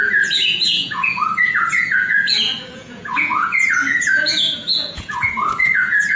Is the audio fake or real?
fake